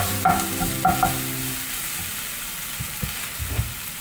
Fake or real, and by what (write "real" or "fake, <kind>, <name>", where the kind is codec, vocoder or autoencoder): real